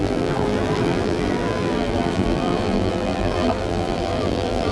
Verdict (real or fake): fake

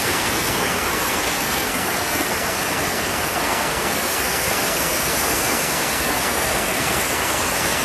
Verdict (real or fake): fake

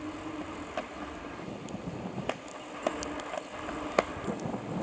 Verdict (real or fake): real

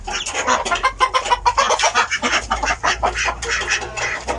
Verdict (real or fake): real